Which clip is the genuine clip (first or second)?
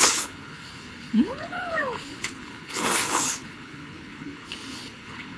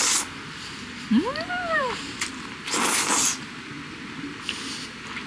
second